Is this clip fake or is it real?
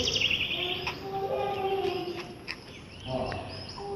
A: real